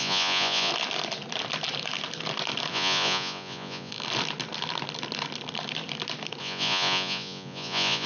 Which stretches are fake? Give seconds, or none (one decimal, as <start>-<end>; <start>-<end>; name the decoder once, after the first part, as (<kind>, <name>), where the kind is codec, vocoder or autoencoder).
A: 0.0-0.7 (vocoder, Vocos); 2.7-3.9; 6.4-8.1